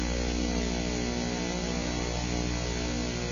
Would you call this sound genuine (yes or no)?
yes